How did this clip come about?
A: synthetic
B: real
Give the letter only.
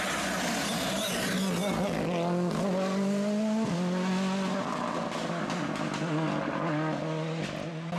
B